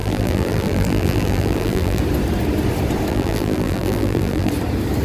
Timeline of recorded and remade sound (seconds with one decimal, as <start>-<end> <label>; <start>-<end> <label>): 0.0-2.0 remade; 2.0-3.1 recorded; 3.1-4.5 remade; 4.5-5.0 recorded